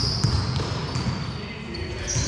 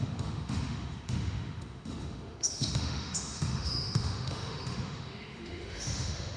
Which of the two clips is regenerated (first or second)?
second